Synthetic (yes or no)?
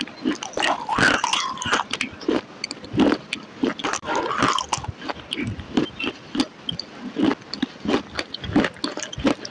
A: no